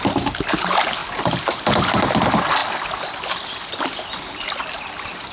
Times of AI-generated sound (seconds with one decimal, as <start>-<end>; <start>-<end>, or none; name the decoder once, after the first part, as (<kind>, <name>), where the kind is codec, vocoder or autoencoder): 1.0-2.1 (vocoder, BigVGAN v2); 2.6-3.8